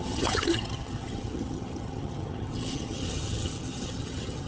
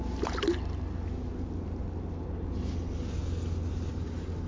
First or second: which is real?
second